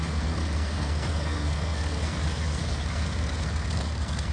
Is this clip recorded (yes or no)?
no